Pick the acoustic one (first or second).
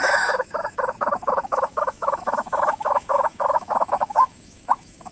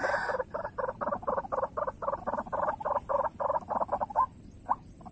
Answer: second